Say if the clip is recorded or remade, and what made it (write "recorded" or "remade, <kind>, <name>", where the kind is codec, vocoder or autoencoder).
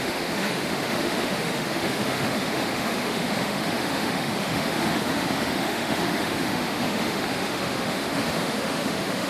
remade, autoencoder, DAC-VAE